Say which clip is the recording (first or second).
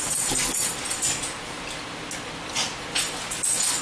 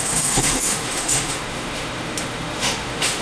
first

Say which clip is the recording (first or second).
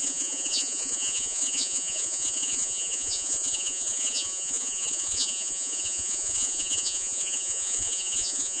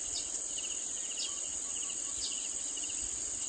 second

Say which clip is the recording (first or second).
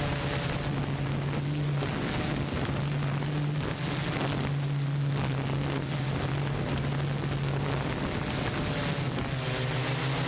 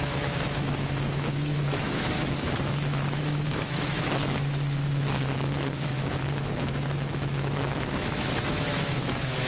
first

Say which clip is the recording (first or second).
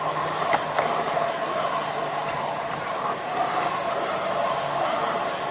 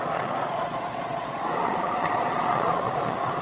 first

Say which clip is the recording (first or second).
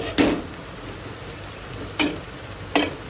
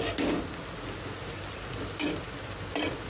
second